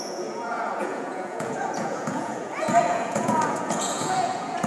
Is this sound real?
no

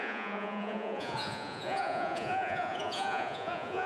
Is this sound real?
no